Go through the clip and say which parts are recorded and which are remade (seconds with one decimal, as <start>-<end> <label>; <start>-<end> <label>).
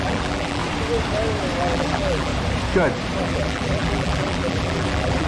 0.0-0.6 remade; 0.6-1.6 recorded; 1.6-2.3 remade; 2.3-3.2 recorded; 3.2-5.3 remade